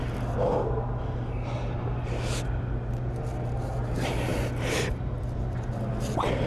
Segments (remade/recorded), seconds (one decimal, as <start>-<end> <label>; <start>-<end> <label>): 0.0-6.5 recorded